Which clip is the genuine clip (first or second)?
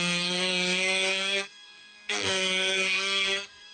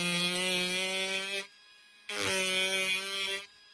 second